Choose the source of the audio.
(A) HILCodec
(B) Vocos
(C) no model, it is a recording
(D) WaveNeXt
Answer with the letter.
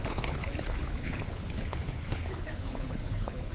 A